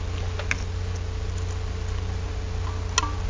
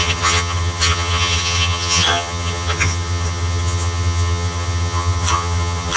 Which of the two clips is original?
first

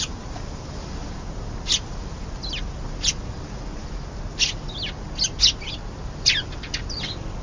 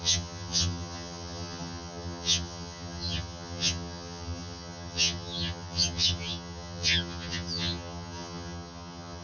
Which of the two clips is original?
first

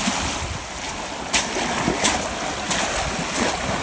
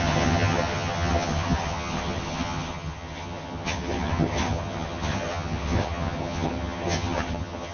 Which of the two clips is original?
first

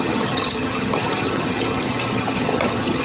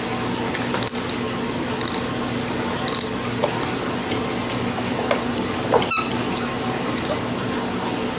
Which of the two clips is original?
second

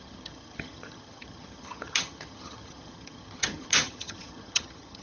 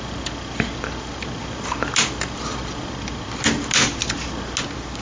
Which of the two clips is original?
second